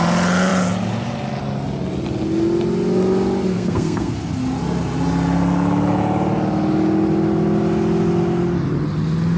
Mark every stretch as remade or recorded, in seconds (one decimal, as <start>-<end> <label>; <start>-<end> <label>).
0.0-3.5 recorded; 3.5-4.1 remade; 4.1-9.4 recorded